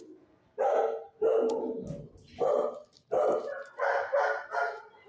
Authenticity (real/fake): real